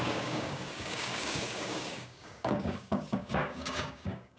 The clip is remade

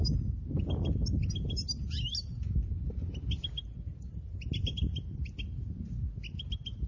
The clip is recorded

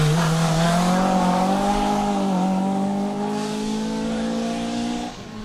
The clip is remade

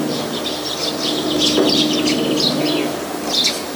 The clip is recorded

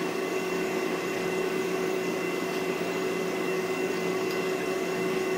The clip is remade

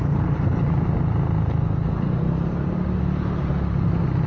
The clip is recorded